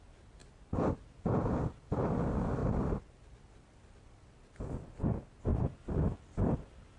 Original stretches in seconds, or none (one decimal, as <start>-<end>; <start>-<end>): 0.0-0.4; 1.5-2.6; 3.1-5.5; 6.5-7.0